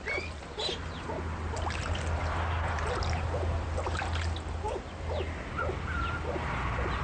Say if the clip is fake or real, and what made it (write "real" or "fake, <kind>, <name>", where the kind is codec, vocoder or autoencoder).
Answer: real